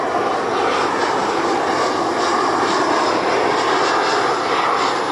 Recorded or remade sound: recorded